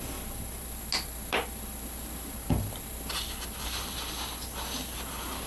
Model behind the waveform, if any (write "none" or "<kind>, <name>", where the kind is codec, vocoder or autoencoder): none